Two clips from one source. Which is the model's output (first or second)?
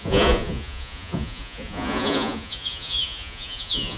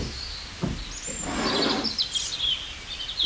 first